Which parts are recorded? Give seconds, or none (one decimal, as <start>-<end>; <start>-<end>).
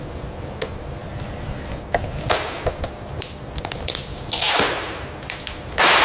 0.0-6.0